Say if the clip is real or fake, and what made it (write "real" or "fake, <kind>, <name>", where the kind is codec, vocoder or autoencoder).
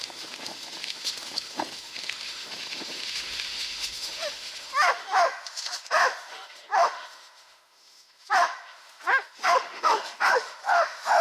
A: fake, autoencoder, DAC-VAE